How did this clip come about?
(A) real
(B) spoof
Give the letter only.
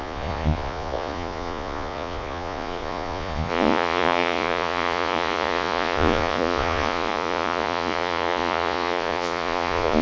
B